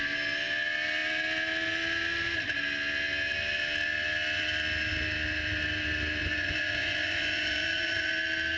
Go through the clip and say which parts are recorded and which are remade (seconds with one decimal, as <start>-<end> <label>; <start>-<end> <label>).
0.0-6.2 recorded; 6.2-8.1 remade; 8.1-8.6 recorded